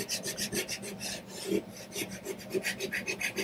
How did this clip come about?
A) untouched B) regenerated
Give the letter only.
B